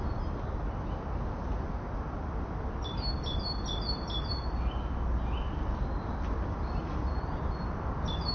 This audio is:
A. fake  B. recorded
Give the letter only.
B